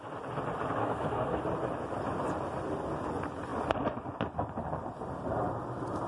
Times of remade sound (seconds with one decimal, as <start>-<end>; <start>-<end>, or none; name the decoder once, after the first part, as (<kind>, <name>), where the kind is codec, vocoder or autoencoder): 0.8-1.4 (codec, SNAC)